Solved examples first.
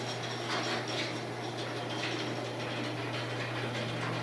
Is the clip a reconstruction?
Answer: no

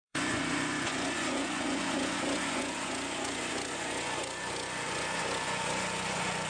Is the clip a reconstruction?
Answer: yes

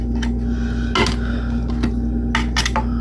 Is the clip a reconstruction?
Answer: no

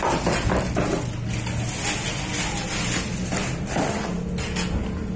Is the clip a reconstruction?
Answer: no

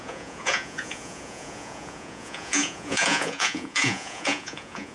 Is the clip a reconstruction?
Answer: yes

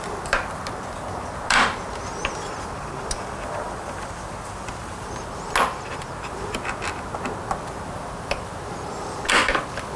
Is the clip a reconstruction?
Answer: no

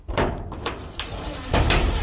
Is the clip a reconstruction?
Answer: no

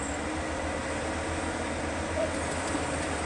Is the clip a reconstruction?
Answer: no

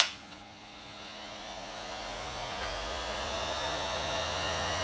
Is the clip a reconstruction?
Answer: yes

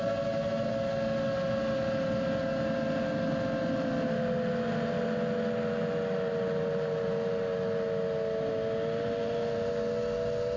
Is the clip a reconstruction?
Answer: no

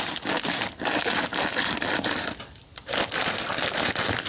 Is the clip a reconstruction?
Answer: no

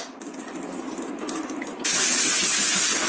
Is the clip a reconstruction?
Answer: no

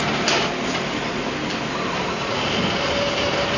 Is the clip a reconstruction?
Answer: no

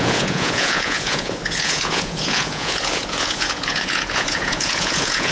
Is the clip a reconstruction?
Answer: yes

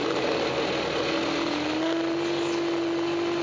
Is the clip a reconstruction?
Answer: no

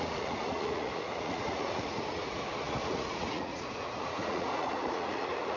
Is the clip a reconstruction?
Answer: yes